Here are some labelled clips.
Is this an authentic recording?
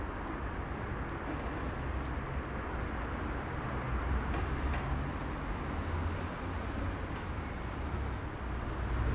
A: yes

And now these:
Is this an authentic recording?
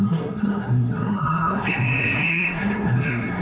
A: no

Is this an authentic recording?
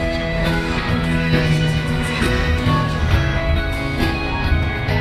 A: no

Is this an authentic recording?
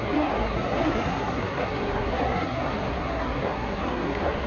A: no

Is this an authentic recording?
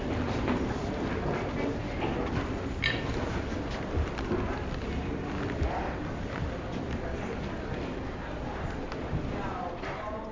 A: yes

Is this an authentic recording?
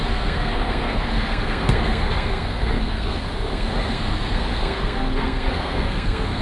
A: no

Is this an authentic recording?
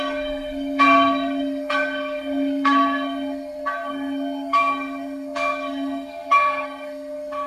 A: no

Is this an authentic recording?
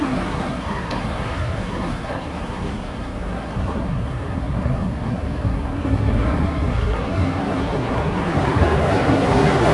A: no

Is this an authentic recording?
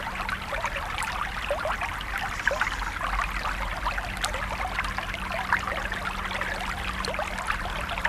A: yes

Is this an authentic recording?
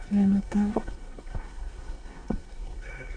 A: no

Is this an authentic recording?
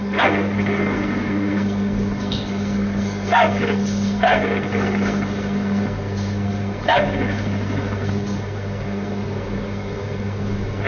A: no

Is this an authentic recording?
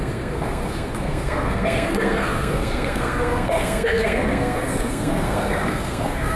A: no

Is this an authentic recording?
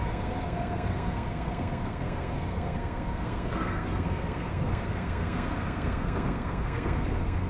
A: no